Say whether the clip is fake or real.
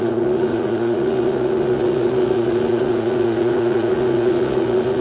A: fake